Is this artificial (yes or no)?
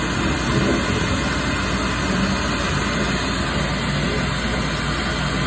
no